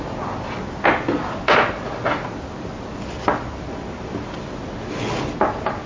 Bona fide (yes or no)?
yes